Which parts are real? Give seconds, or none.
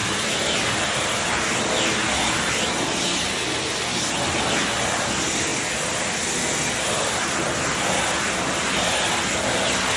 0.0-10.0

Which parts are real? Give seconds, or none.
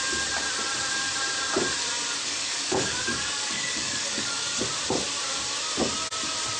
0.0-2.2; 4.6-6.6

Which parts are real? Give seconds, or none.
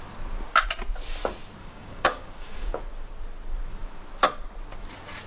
0.0-1.6; 2.8-5.3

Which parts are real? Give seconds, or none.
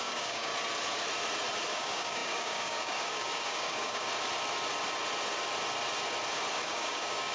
0.5-1.7; 4.1-6.5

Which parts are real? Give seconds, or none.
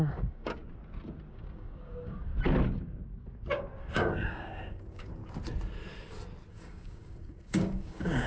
0.6-1.3; 2.3-3.8; 5.2-6.5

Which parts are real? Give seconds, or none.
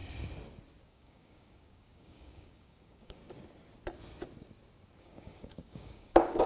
0.0-0.8; 3.2-5.0